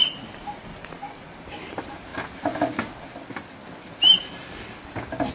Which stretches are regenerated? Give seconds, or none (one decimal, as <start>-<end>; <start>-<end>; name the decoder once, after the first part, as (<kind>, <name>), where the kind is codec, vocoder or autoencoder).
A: 0.7-1.3 (vocoder, Vocos)